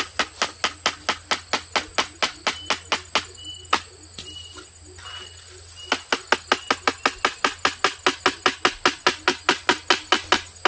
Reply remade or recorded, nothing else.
recorded